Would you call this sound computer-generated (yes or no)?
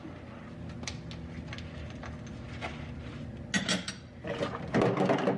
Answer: no